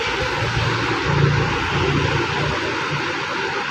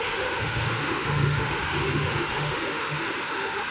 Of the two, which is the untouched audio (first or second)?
first